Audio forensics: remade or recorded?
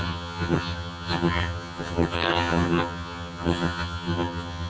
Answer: remade